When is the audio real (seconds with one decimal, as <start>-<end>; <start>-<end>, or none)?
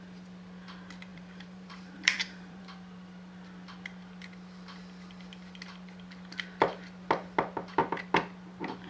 0.0-1.1; 2.6-8.9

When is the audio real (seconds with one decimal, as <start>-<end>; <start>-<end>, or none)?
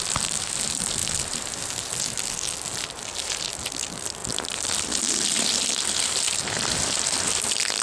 0.0-7.8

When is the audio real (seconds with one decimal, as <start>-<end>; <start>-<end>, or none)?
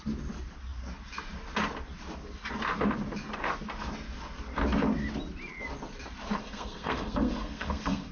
0.0-6.4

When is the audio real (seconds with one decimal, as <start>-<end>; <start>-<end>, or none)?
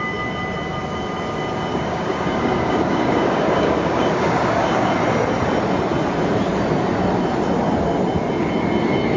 0.0-1.7; 4.9-9.2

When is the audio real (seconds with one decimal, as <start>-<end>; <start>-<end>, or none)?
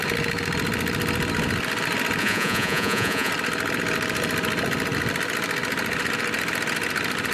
0.0-2.2; 3.3-7.3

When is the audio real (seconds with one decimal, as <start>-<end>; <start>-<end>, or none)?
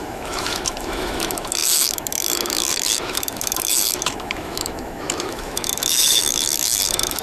none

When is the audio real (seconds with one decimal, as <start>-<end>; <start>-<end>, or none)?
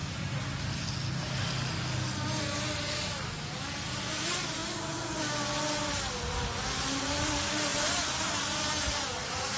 0.0-7.7; 8.6-9.6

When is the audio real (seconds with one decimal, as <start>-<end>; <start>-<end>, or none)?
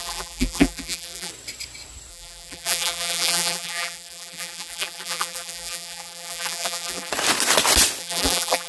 1.3-2.1; 7.1-8.0